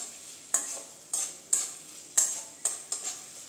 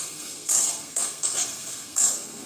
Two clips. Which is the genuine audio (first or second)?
first